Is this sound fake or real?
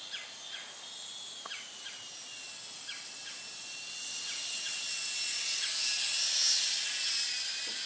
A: real